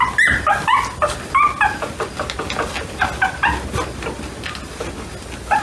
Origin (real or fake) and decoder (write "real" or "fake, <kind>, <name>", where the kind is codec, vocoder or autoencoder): real